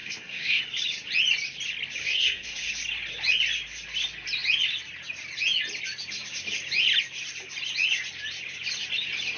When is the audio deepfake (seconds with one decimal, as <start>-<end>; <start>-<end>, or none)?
0.0-0.6; 2.0-2.7